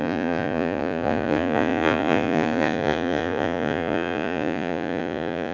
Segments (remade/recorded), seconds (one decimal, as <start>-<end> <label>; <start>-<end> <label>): 0.0-5.5 remade